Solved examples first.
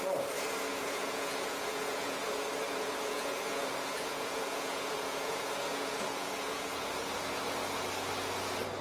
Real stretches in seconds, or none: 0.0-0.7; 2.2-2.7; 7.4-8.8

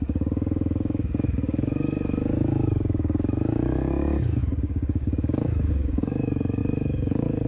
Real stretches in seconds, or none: none

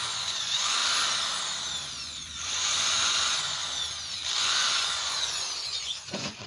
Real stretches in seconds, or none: 0.8-1.9; 3.6-4.4

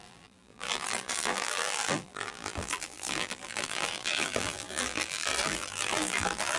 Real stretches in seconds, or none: none

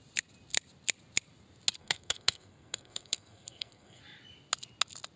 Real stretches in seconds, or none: 0.0-1.8; 4.0-5.2

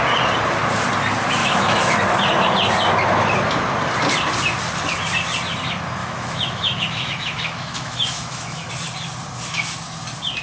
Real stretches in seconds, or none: 0.0-1.4; 2.0-6.0; 8.7-10.4